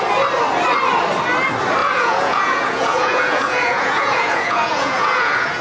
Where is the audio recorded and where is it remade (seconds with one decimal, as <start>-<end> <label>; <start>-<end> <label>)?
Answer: 0.0-1.8 recorded; 1.8-5.6 remade